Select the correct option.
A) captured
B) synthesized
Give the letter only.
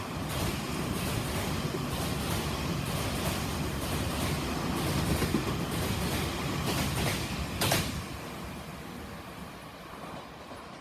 A